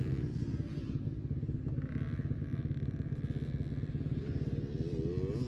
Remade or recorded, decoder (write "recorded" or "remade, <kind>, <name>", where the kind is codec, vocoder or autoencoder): recorded